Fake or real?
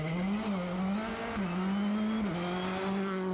real